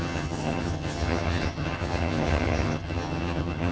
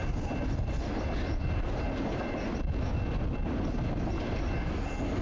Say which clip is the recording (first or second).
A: second